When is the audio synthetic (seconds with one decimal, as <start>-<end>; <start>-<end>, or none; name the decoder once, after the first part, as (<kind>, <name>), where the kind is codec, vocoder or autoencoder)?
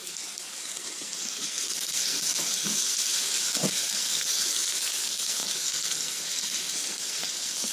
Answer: 0.0-7.7 (codec, SNAC)